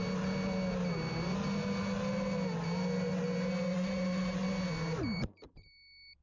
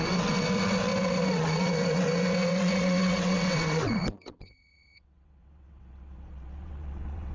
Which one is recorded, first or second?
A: first